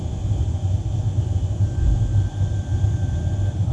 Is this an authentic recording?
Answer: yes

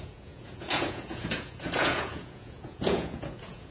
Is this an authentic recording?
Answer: no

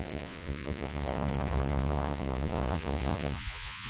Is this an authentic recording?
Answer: no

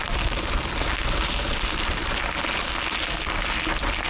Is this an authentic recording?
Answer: yes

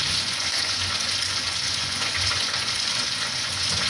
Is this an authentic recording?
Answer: no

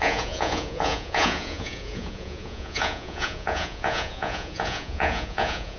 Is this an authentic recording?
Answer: no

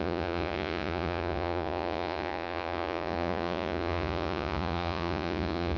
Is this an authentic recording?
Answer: no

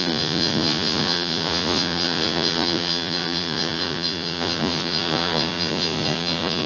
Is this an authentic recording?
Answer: no